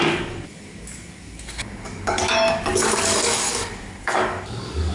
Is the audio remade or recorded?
remade